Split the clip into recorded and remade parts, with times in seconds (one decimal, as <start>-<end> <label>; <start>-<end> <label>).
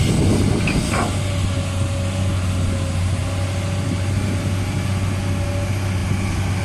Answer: 0.0-6.6 recorded